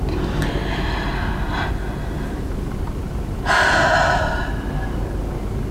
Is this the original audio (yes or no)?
yes